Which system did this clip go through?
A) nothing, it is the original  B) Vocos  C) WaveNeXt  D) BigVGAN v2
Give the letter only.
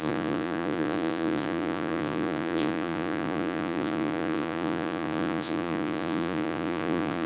B